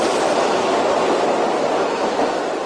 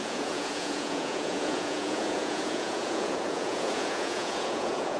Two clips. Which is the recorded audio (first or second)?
first